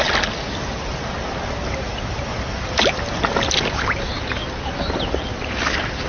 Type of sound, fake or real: real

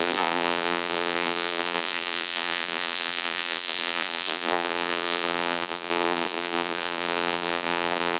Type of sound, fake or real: fake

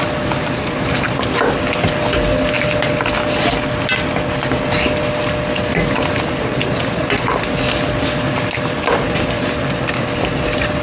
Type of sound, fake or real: real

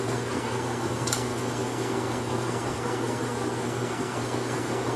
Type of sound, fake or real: fake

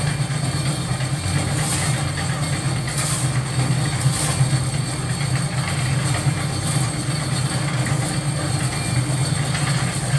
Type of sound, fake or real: real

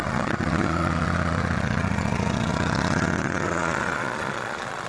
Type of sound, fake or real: fake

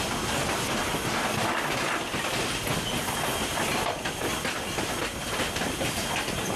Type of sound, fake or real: real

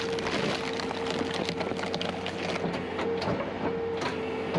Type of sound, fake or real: real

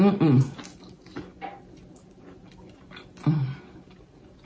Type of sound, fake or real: real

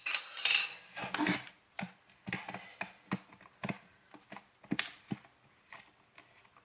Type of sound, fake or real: real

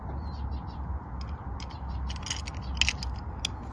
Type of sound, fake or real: real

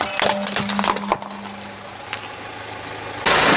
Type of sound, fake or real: real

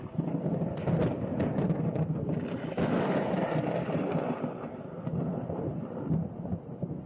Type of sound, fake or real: real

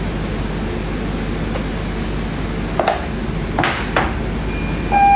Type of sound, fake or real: real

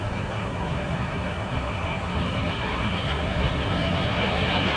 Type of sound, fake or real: fake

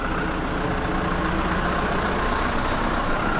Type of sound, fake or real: real